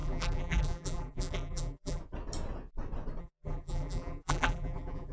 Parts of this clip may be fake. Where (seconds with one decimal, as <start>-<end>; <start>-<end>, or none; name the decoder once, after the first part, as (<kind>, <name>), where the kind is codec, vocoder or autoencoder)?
0.0-2.0 (vocoder, BigVGAN v2); 3.2-5.1

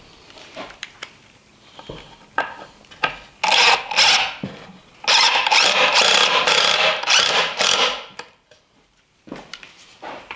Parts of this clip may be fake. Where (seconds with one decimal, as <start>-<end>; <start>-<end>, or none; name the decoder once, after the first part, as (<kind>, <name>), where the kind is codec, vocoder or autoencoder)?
0.0-1.5 (vocoder, BigVGAN v2); 5.1-10.4

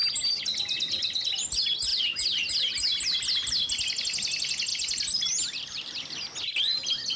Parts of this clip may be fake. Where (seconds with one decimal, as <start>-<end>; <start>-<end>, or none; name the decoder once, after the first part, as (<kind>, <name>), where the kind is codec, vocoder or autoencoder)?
1.9-2.5 (vocoder, BigVGAN v2); 4.7-5.3

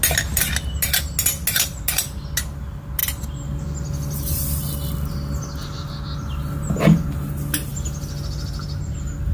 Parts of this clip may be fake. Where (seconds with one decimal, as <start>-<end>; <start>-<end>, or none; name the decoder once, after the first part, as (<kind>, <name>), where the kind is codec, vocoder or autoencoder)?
none